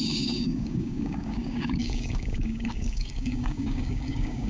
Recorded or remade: remade